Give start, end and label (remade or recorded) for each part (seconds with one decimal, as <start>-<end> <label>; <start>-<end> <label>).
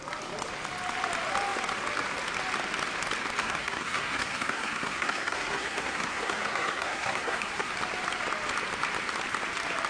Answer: 0.0-3.4 recorded; 3.4-7.7 remade; 7.7-9.9 recorded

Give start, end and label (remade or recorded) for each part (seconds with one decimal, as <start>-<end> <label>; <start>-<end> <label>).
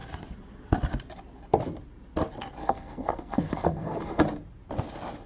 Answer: 0.0-2.6 recorded; 2.6-4.2 remade; 4.2-5.3 recorded